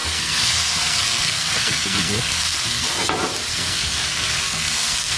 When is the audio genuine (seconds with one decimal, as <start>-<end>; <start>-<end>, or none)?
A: 3.1-3.5